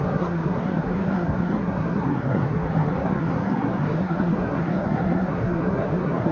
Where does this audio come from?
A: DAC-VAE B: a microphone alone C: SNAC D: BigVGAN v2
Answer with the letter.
C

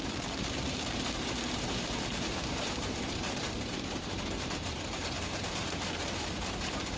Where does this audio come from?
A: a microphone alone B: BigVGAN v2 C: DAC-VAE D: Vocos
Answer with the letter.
B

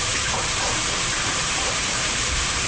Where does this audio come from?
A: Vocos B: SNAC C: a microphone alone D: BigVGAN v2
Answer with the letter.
D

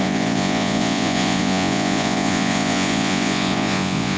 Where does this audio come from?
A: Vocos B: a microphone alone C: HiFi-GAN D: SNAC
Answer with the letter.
A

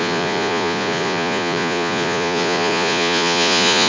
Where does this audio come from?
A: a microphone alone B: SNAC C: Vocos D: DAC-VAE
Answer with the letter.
C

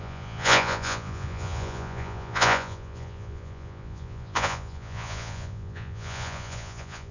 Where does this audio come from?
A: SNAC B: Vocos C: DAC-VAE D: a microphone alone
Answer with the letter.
B